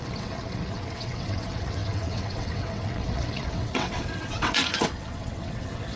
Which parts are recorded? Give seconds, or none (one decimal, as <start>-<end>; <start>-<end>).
none